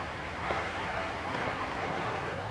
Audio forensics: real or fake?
fake